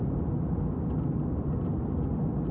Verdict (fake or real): real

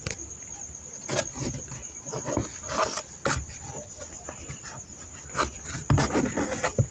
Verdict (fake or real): real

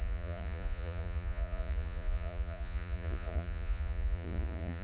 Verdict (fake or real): fake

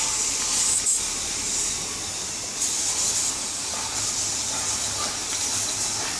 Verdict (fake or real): real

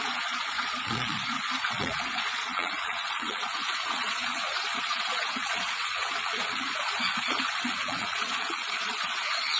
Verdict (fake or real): fake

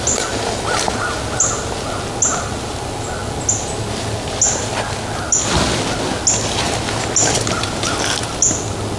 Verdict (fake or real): real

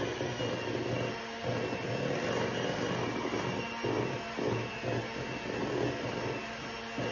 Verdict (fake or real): real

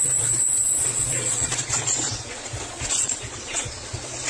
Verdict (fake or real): fake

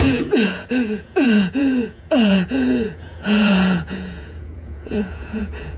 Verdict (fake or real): fake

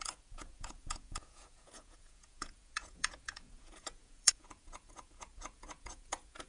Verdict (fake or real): fake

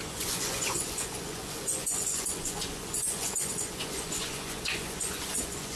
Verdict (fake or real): fake